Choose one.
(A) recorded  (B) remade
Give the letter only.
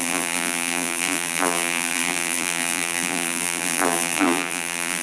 B